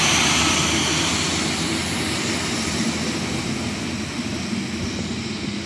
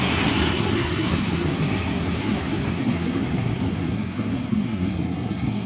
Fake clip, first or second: second